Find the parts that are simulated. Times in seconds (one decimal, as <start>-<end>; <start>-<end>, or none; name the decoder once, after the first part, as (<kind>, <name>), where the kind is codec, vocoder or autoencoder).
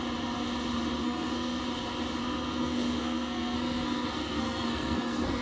1.0-1.6 (codec, SNAC); 2.2-5.4